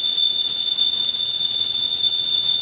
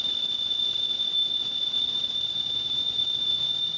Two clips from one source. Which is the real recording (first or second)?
second